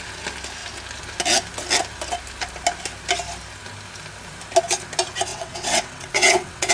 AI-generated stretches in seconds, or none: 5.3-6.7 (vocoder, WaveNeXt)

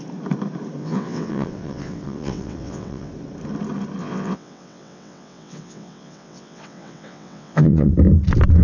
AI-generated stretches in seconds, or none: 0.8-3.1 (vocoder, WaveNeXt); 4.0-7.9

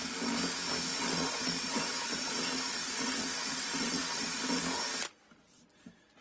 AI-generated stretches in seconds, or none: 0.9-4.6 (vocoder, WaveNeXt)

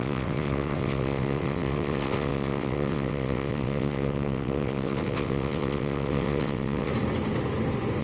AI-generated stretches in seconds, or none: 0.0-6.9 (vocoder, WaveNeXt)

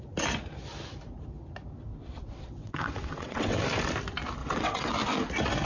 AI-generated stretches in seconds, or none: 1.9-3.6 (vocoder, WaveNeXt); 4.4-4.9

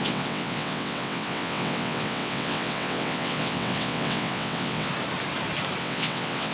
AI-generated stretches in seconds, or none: 0.0-4.9 (vocoder, WaveNeXt); 5.8-6.5

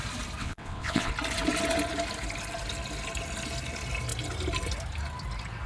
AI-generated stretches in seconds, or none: 0.4-1.1 (vocoder, WaveNeXt)